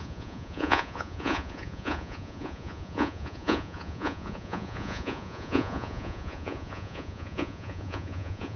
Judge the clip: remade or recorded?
remade